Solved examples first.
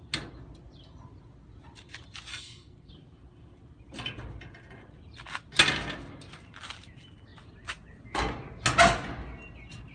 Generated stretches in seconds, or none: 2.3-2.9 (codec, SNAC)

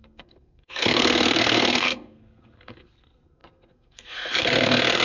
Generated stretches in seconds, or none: 0.0-5.0 (codec, SNAC)

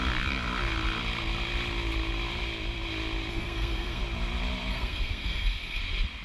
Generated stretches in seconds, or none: 3.3-4.0 (codec, SNAC); 4.7-5.8

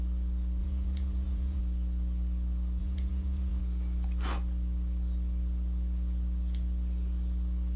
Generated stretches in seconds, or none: 0.6-1.6 (vocoder, Vocos); 2.8-3.6

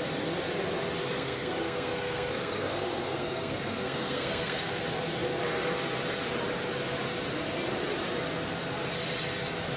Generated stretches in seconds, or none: 1.0-4.8 (codec, SNAC)

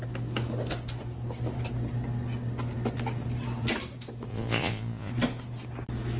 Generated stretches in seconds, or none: 4.3-5.1 (vocoder, Vocos)